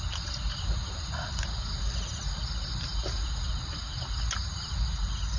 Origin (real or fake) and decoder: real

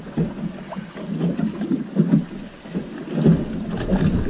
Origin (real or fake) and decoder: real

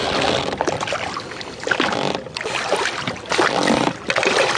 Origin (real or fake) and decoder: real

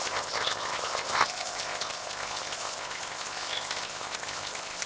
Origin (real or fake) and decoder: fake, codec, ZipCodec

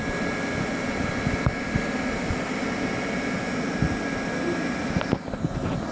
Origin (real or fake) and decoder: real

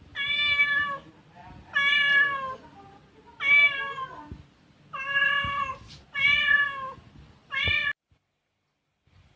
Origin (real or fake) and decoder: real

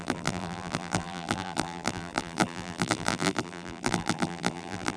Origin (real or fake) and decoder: fake, vocoder, BigVGAN v2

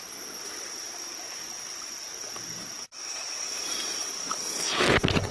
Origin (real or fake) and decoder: real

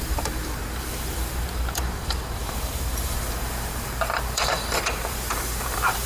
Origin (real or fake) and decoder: fake, vocoder, BigVGAN v2